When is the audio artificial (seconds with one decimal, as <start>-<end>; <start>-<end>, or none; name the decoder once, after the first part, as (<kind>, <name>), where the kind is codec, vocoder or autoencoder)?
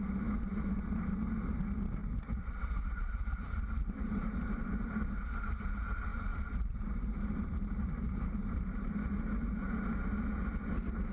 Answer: 2.0-5.4 (vocoder, BigVGAN v2); 6.1-7.9